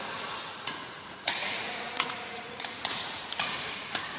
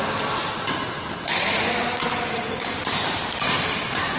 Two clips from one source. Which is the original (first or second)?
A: second